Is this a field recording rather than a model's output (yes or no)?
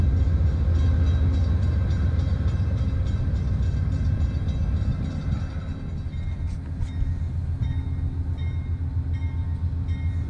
yes